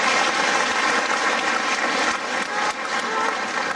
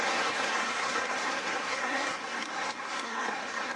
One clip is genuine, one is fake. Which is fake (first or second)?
second